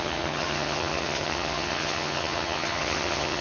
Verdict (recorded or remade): remade